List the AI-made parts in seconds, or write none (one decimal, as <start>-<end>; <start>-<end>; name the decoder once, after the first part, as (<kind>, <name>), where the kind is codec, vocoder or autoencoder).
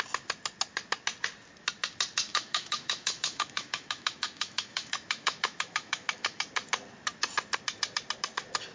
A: 2.3-6.4 (autoencoder, DAC-VAE)